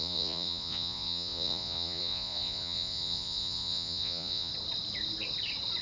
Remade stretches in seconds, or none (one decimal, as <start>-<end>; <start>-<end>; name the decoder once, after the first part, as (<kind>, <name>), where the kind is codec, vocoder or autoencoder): 0.0-4.5 (vocoder, Vocos)